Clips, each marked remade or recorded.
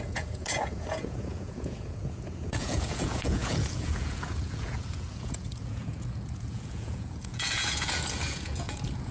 remade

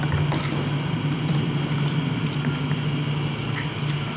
recorded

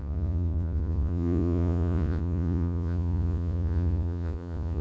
remade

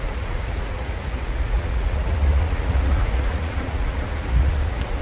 remade